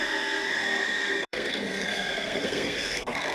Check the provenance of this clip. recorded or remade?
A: remade